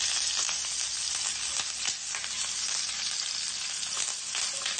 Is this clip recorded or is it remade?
recorded